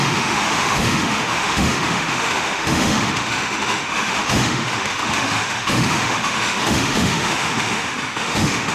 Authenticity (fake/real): fake